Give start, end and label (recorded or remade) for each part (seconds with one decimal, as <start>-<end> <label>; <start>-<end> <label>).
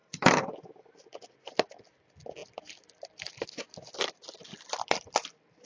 0.0-1.3 remade; 1.3-2.4 recorded; 2.4-5.7 remade